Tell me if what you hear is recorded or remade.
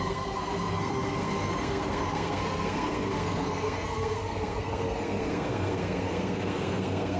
remade